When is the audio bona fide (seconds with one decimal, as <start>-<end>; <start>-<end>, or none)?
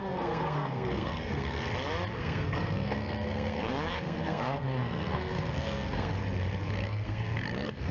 1.7-2.2; 6.1-6.6